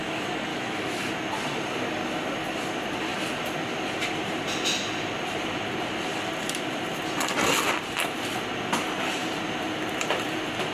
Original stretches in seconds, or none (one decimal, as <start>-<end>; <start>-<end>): 0.0-0.5; 1.1-10.7